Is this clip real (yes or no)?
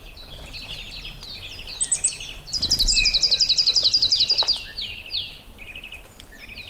yes